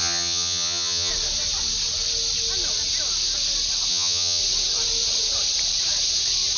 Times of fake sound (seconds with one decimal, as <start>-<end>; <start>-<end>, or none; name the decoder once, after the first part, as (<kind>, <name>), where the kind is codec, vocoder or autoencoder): 0.0-1.1 (vocoder, HiFi-GAN); 3.9-4.4